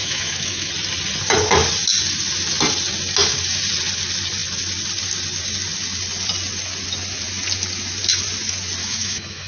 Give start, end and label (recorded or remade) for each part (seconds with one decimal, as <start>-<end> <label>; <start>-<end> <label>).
0.0-0.7 remade; 0.7-8.8 recorded; 8.8-9.5 remade

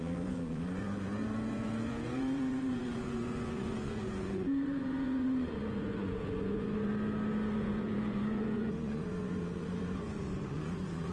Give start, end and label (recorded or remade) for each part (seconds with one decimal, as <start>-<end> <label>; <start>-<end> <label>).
0.0-6.9 remade; 6.9-7.5 recorded; 7.5-11.1 remade

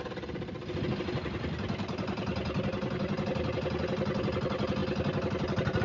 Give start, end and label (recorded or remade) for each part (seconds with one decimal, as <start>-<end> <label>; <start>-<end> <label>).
0.0-5.8 recorded